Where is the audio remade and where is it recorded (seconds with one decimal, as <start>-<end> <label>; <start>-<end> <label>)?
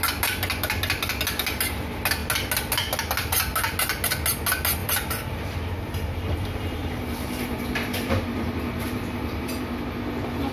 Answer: 0.0-4.8 recorded; 4.8-9.8 remade; 9.8-10.5 recorded